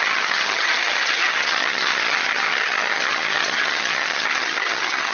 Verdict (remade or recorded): remade